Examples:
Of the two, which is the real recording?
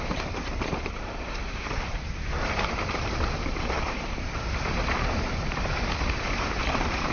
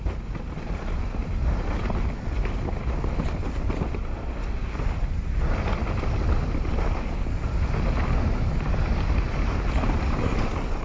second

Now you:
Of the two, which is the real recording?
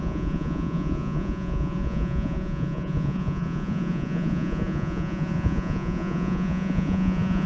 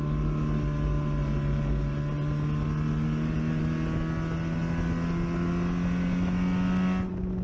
second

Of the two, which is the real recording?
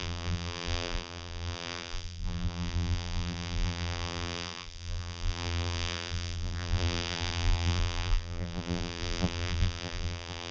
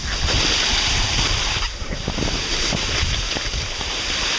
second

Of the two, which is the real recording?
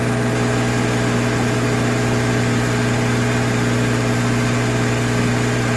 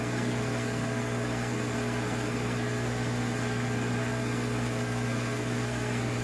first